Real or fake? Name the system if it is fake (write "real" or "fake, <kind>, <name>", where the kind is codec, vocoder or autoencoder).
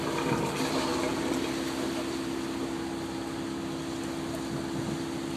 real